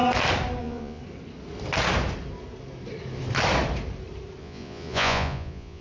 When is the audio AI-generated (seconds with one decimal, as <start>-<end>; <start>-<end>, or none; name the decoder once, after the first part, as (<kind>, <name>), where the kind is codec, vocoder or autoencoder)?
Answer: 0.6-1.0 (vocoder, Vocos); 4.4-5.8

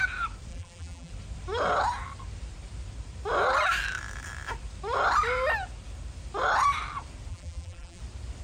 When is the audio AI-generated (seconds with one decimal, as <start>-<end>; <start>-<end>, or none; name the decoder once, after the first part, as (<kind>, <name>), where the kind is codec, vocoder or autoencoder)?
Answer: 0.5-1.1 (vocoder, BigVGAN v2); 7.3-8.0

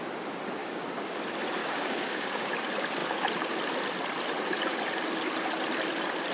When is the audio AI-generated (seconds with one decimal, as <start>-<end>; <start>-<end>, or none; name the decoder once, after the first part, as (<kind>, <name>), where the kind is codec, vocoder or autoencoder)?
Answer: 0.6-1.2 (codec, DAC); 1.6-2.5